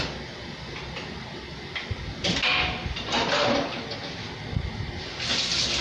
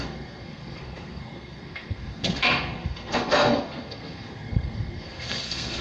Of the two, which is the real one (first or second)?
first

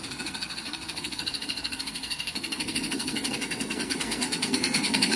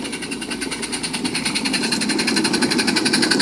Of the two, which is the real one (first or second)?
second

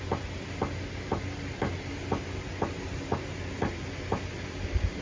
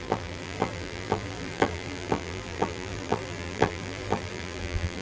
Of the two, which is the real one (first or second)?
first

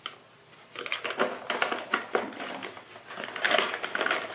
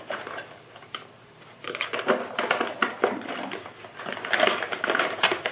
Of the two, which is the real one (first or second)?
first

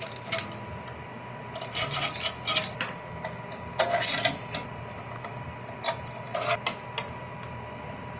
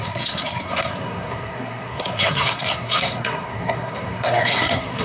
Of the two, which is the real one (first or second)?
first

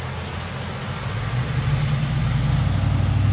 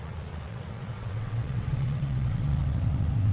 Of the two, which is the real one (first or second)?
first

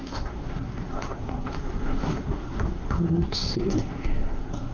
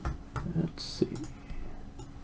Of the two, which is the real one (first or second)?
second